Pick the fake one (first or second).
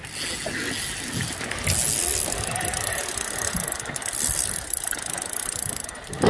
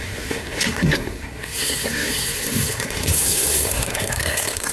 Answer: second